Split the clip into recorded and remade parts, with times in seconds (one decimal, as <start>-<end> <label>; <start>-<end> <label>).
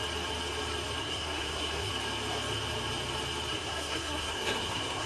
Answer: 0.0-1.0 recorded; 1.0-1.9 remade; 1.9-3.5 recorded; 3.5-5.1 remade